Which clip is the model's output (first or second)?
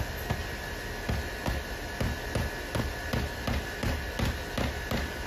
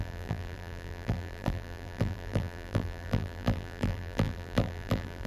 second